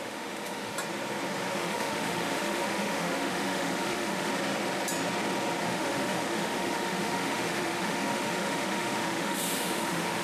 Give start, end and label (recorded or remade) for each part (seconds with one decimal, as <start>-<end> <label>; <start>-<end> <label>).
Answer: 0.0-0.7 remade; 0.7-1.5 recorded; 1.5-4.3 remade; 4.3-5.6 recorded; 5.6-10.2 remade